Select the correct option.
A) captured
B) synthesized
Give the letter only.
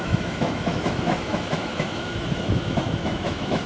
B